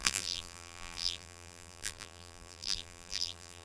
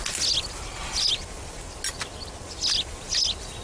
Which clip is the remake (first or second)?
first